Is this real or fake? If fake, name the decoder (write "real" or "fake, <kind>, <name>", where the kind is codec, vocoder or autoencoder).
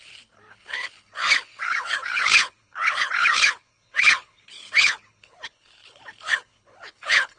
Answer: fake, codec, HILCodec